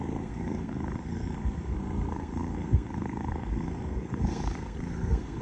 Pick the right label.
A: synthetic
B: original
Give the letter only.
A